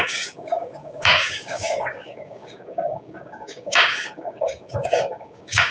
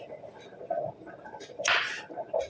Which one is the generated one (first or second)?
first